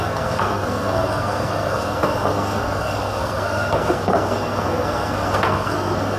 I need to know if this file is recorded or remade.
remade